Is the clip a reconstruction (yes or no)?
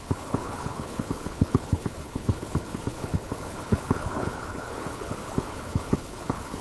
yes